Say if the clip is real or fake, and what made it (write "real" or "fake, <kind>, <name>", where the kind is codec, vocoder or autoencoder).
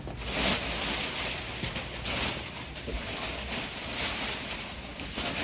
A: real